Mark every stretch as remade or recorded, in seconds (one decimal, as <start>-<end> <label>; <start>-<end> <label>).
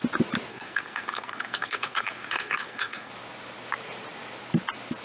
0.0-0.5 recorded; 0.5-3.1 remade; 3.1-5.0 recorded